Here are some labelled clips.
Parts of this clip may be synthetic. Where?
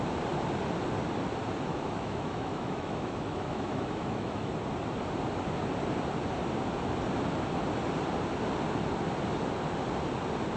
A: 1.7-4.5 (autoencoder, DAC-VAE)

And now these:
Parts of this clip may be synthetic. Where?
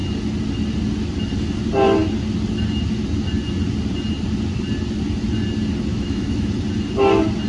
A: 5.9-6.5 (autoencoder, DAC-VAE)